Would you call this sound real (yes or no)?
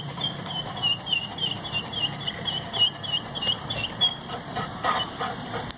no